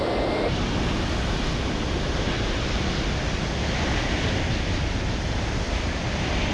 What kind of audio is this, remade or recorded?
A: recorded